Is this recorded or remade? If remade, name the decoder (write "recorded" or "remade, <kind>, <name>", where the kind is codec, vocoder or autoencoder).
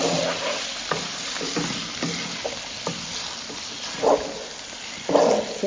recorded